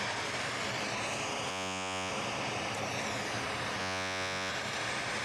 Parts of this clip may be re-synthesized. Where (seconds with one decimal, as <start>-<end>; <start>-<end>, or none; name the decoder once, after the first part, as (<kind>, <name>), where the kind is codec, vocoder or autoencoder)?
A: 1.5-2.1 (vocoder, Vocos); 3.8-4.5